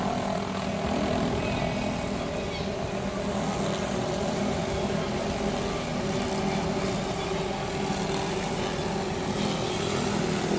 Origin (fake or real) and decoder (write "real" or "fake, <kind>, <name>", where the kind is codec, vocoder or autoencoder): real